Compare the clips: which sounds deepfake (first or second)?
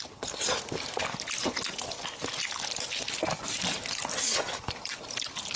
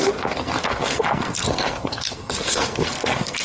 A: second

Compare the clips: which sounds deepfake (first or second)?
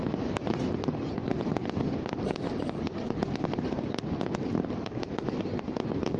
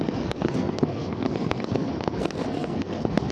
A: second